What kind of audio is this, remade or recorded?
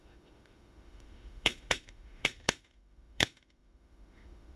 remade